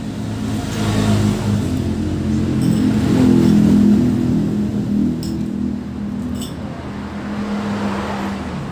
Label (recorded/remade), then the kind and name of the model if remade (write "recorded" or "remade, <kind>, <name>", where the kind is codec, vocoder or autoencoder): recorded